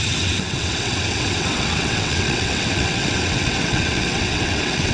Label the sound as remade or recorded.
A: remade